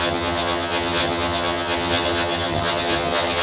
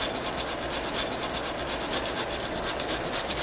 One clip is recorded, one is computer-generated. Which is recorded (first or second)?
second